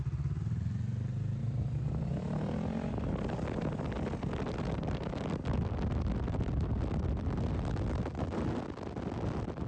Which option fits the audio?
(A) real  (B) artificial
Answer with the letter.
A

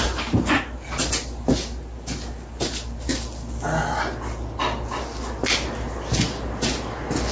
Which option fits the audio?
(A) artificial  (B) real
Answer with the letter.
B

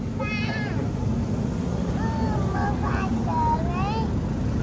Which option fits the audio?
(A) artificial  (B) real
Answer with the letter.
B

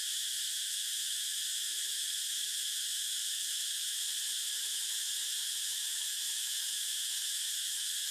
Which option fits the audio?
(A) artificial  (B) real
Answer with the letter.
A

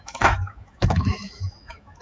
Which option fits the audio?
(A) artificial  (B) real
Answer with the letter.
A